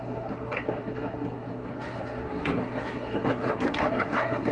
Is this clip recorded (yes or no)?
no